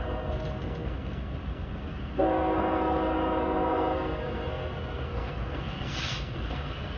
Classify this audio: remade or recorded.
remade